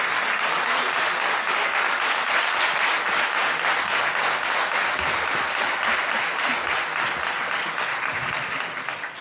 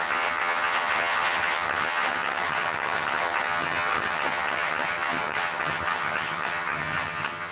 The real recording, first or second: first